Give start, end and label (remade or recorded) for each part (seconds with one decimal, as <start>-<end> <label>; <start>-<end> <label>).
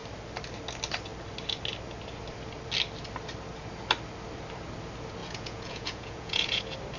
0.0-5.2 recorded; 5.2-6.6 remade; 6.6-7.0 recorded